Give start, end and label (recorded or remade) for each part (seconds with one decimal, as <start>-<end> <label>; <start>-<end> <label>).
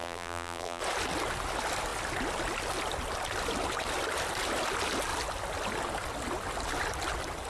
0.0-0.8 remade; 0.8-7.5 recorded